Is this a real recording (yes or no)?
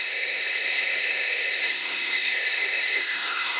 no